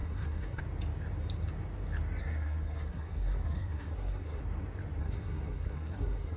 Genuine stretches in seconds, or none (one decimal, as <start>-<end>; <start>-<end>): 0.6-2.2; 4.4-5.0